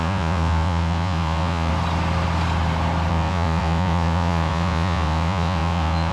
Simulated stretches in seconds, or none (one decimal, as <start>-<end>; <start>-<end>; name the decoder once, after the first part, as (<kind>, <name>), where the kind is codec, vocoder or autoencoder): 0.0-1.7 (vocoder, Vocos); 3.1-6.1